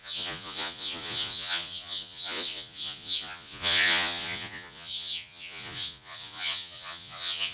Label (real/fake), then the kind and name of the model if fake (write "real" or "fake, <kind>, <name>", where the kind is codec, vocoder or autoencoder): fake, vocoder, Vocos